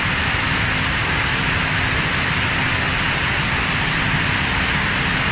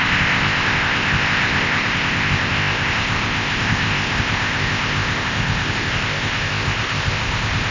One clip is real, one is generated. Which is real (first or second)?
first